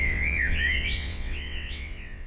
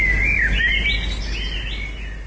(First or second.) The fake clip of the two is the first